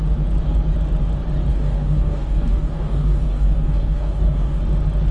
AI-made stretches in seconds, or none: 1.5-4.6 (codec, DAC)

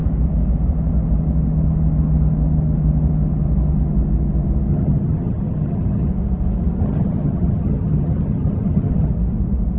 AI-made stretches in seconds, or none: 4.7-6.1 (vocoder, HiFi-GAN); 6.8-9.1

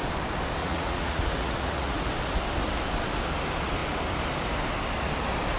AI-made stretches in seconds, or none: 0.6-2.0 (vocoder, Vocos)

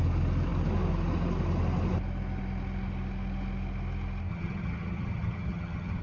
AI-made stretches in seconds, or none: 4.3-6.0 (vocoder, HiFi-GAN)

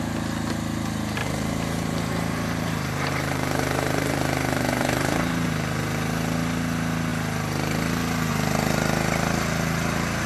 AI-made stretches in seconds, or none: 1.2-5.8 (vocoder, BigVGAN v2)

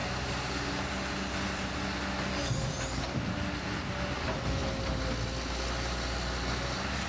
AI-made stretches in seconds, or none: none